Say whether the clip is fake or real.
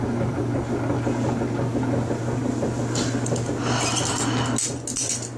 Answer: real